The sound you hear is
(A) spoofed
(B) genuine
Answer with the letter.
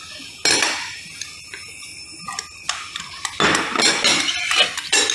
B